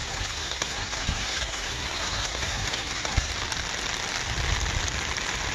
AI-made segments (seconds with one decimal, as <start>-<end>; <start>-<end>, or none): 0.0-3.3